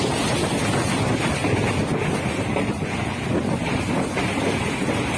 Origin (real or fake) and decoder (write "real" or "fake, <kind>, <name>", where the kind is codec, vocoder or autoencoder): real